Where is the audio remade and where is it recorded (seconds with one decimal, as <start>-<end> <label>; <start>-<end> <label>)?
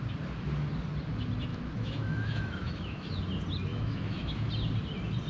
0.0-1.5 recorded; 1.5-3.2 remade; 3.2-3.7 recorded; 3.7-4.5 remade; 4.5-5.3 recorded